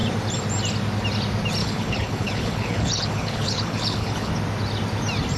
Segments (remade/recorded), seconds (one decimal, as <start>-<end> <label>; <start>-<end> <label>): 0.0-1.6 recorded; 1.6-4.3 remade; 4.3-5.4 recorded

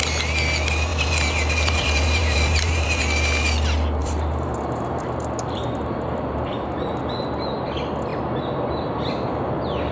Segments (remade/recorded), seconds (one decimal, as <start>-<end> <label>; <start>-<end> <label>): 0.0-0.9 recorded; 0.9-3.0 remade; 3.0-4.0 recorded; 4.0-7.0 remade; 7.0-9.9 recorded

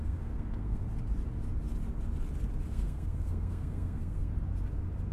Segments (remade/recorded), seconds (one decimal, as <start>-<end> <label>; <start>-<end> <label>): 0.0-0.8 remade; 0.8-2.7 recorded; 2.7-4.3 remade; 4.3-5.1 recorded

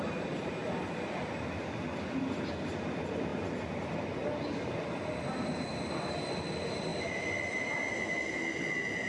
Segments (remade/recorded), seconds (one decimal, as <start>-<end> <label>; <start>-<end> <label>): 0.0-9.1 recorded

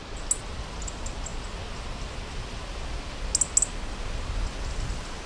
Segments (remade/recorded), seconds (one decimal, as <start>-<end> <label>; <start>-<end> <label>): 0.0-5.3 recorded